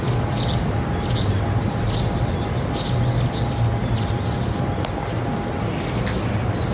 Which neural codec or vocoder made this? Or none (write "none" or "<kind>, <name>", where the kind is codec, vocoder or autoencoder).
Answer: none